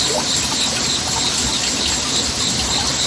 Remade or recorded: recorded